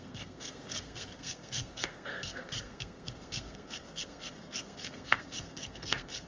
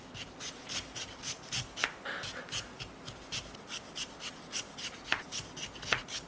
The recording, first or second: second